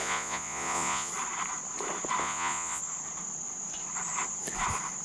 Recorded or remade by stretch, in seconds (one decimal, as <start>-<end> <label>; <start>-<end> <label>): 0.0-1.1 remade; 1.1-2.2 recorded; 2.2-2.8 remade; 2.8-5.0 recorded